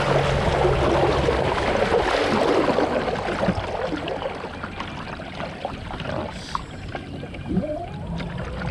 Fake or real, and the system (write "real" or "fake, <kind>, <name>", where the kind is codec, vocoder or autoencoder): real